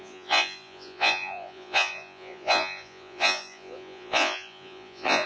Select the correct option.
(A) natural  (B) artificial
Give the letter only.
B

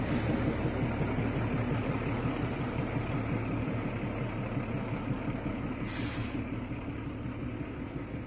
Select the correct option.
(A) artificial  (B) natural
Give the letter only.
B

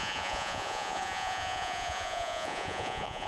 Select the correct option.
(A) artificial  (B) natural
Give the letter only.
A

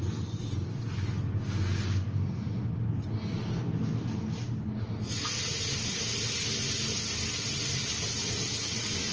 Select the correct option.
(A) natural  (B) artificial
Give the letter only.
A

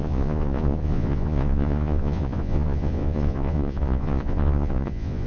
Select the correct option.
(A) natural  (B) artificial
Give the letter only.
B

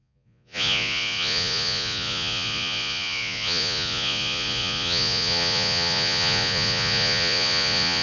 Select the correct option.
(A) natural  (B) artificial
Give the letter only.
B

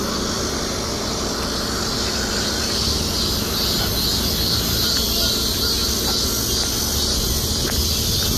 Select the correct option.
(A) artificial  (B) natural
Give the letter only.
B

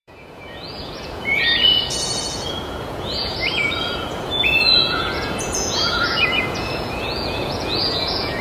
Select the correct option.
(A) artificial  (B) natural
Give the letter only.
A